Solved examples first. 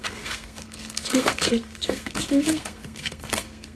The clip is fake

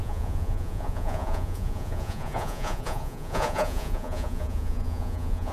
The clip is fake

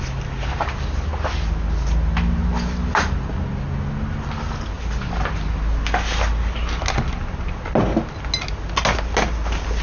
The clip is real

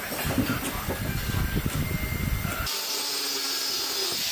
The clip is real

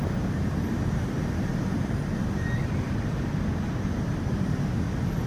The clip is real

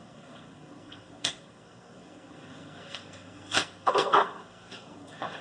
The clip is fake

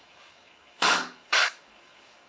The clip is fake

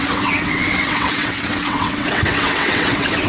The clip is fake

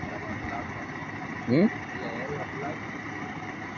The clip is real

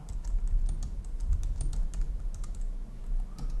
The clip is real